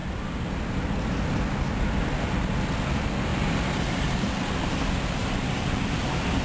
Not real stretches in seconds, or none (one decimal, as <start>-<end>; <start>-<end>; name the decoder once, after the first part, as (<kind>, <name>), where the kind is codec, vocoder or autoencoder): 3.3-4.3 (vocoder, BigVGAN v2); 5.2-6.0